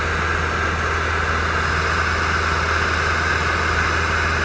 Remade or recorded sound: recorded